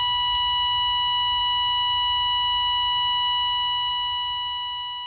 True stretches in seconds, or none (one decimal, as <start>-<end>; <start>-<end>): 0.0-5.1